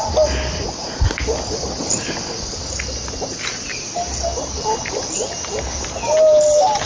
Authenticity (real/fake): real